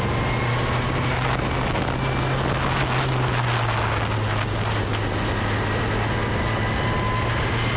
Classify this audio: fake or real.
real